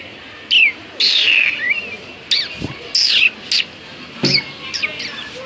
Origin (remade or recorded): recorded